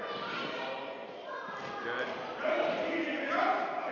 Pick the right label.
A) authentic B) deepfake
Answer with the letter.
A